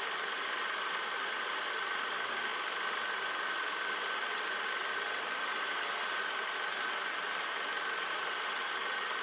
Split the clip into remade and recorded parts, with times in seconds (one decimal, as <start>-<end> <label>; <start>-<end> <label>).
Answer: 0.0-9.2 recorded